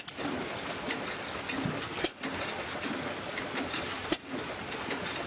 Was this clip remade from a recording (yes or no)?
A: no